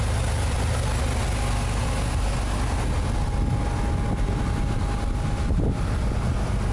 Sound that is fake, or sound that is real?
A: real